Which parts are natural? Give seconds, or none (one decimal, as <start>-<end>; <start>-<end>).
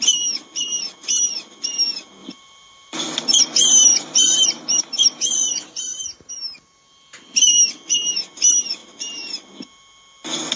0.0-2.2; 3.0-3.9; 6.3-8.8; 9.5-10.6